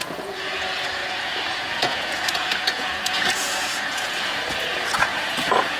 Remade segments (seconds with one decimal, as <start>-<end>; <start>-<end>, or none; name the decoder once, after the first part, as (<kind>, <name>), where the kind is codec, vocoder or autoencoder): 0.0-5.8 (vocoder, Vocos)